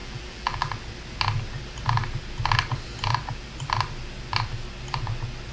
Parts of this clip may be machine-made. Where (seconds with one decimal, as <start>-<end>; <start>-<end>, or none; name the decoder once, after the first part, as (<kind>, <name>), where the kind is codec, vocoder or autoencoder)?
0.0-0.7 (vocoder, BigVGAN v2)